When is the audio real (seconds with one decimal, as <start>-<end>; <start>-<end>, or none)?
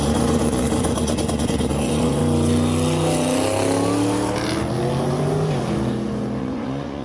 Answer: 2.2-6.4